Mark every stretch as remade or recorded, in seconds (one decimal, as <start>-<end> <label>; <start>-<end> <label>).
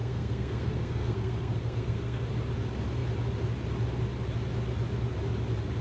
0.0-2.3 remade; 2.3-5.8 recorded